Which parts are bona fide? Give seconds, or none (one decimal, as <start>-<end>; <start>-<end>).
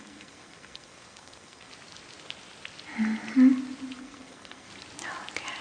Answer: 1.7-4.0; 4.7-5.6